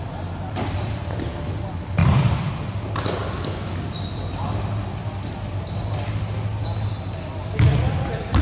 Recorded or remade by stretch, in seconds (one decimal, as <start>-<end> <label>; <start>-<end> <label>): 0.0-2.0 recorded; 2.0-2.5 remade; 2.5-8.4 recorded